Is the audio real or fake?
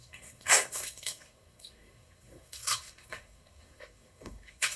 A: fake